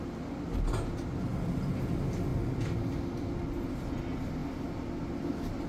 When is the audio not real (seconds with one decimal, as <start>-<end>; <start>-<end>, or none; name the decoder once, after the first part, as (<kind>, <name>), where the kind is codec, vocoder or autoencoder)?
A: none